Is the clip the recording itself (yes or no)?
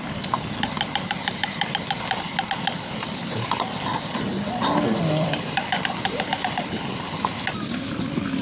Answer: yes